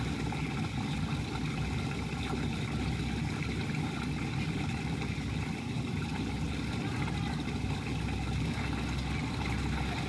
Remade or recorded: recorded